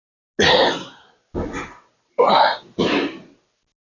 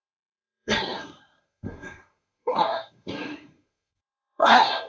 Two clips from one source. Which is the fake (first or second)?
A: second